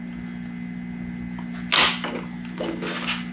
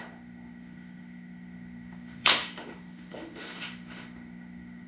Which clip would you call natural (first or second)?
first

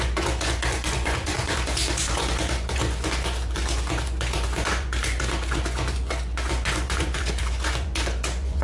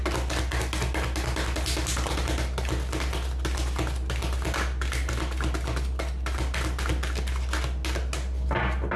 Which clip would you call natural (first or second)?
second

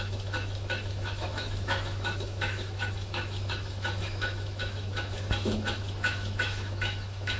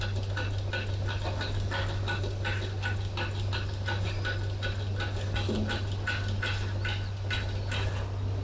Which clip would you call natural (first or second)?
second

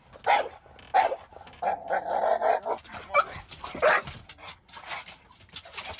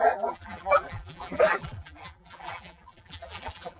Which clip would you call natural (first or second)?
first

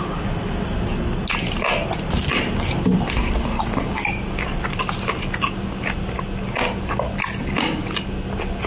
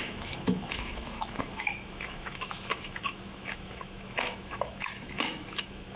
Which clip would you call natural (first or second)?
first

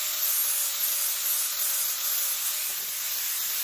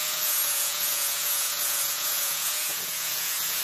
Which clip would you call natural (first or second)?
first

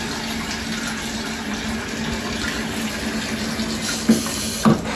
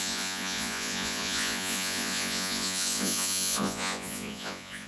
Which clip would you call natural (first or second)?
first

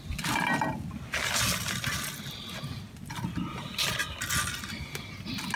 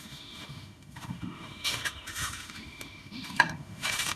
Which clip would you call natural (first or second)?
first